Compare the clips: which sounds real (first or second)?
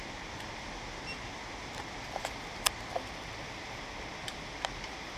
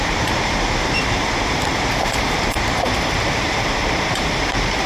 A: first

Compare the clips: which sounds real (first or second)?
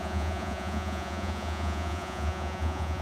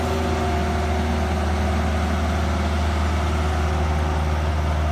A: second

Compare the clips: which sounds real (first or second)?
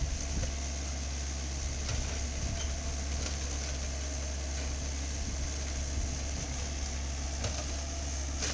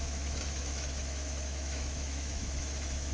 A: first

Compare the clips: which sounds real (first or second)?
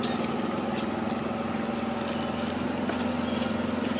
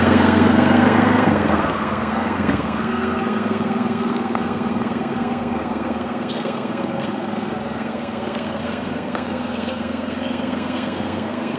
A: first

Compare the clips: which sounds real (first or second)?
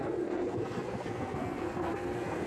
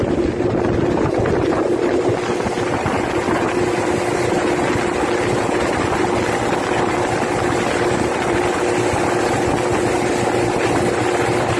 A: second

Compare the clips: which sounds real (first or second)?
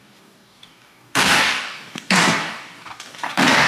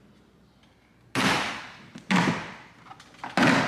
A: second